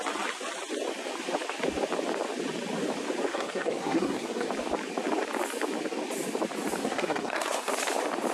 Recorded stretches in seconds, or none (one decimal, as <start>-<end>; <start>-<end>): 0.0-3.3; 4.5-6.8; 7.7-8.3